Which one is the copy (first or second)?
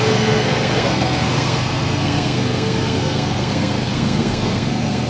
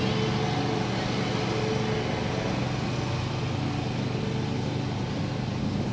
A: first